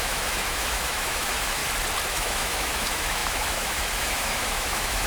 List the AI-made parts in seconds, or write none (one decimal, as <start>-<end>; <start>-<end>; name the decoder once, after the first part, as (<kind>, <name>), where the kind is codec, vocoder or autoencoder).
0.0-1.6 (autoencoder, DAC-VAE); 2.1-5.1